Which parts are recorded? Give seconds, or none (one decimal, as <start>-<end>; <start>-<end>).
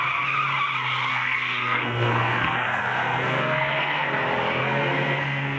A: 0.0-1.1; 4.1-4.6